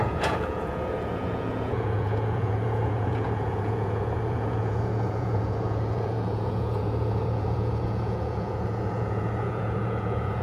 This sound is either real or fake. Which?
fake